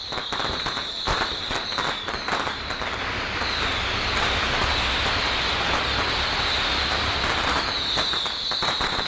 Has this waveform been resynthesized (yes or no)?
no